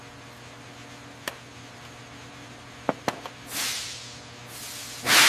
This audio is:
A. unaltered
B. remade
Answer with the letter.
A